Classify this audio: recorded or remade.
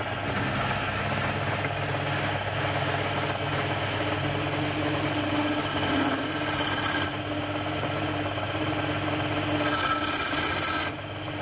recorded